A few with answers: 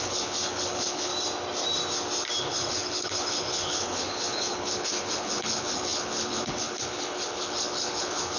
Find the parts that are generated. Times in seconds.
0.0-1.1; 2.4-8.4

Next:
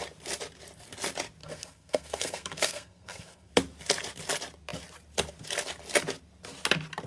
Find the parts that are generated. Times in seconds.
1.4-3.5

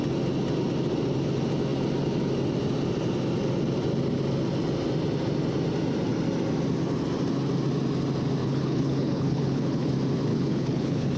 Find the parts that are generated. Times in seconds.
8.4-9.9; 10.3-11.2

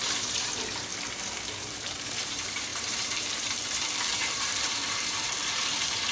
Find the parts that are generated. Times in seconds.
0.0-0.9; 1.7-6.1

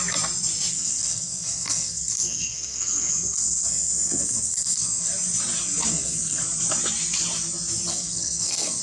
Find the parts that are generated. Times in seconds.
0.7-5.1; 5.9-6.4; 7.9-8.8

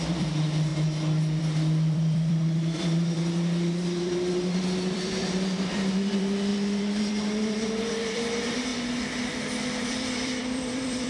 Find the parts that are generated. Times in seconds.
0.0-0.7; 1.4-8.7; 9.7-11.1